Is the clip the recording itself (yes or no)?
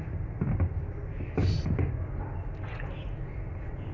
yes